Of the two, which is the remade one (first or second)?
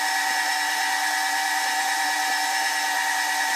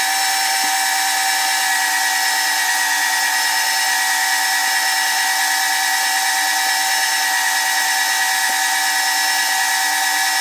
first